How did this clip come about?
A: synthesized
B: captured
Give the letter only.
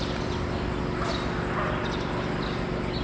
B